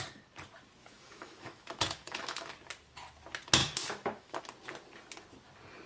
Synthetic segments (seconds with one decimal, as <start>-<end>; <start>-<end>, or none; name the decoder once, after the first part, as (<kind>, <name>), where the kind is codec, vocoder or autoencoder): 0.8-2.5 (autoencoder, DAC-VAE); 3.6-4.4